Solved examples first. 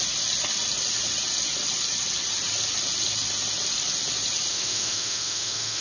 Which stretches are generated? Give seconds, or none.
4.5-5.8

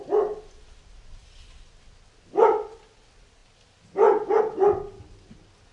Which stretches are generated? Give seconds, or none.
none

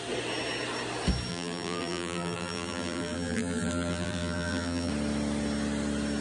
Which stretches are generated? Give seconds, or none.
1.3-4.9

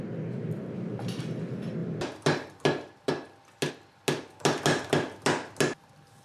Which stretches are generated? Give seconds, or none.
none

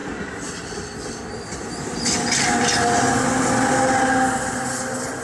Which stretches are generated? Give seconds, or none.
none

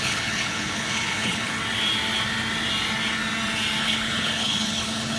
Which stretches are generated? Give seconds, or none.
0.0-1.6; 3.8-5.2

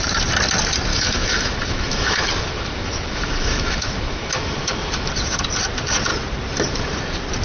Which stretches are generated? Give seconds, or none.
0.9-5.1

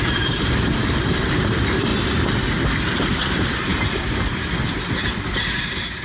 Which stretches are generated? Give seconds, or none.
0.0-1.9; 2.8-6.0